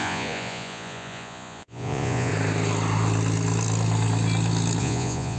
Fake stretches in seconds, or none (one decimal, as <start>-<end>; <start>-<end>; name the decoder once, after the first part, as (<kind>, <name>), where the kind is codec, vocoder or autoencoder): 0.0-2.3 (vocoder, Vocos); 4.8-5.4